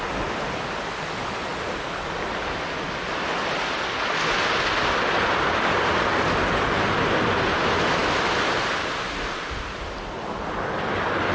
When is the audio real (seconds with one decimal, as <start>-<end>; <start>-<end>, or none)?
0.0-11.3